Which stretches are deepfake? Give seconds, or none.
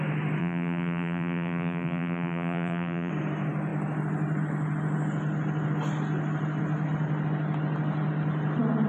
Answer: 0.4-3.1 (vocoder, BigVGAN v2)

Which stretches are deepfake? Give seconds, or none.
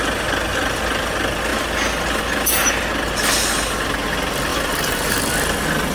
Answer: 4.5-5.2 (vocoder, BigVGAN v2)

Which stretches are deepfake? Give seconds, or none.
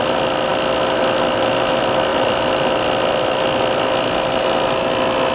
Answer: 2.1-3.6 (vocoder, BigVGAN v2)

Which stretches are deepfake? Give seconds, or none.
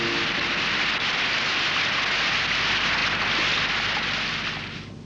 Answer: none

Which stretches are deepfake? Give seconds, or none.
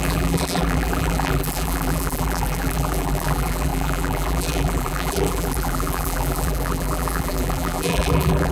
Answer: 0.0-8.5 (vocoder, BigVGAN v2)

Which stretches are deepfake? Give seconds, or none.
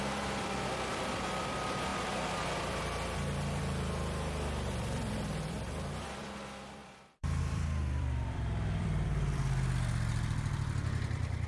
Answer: 0.0-11.5 (vocoder, BigVGAN v2)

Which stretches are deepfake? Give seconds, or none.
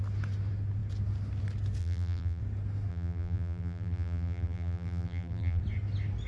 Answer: 1.8-2.4 (vocoder, BigVGAN v2); 2.9-5.6